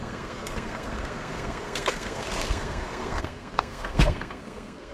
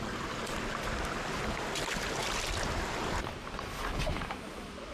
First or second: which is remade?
first